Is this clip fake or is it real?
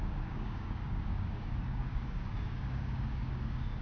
fake